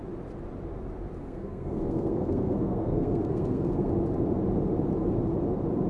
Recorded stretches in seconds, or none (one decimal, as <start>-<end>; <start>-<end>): 0.0-1.2; 3.9-5.9

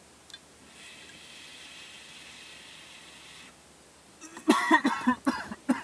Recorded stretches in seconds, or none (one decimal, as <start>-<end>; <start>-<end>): 0.0-5.8

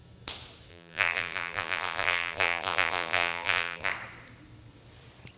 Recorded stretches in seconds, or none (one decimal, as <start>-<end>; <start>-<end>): 0.0-0.7; 3.9-5.4

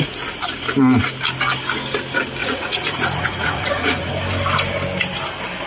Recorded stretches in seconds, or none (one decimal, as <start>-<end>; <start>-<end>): 0.0-2.4; 4.1-5.7

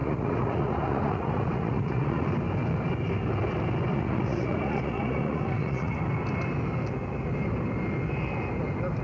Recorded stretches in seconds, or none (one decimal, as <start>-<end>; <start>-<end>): 2.3-3.9; 6.0-9.0

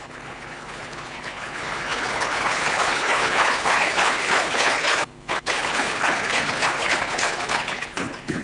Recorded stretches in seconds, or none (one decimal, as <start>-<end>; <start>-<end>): none